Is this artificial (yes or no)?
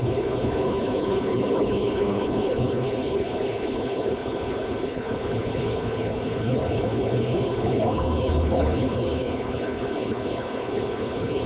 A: yes